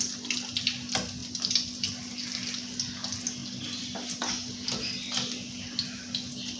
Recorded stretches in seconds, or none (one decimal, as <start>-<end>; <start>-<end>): 0.0-1.2; 2.1-6.6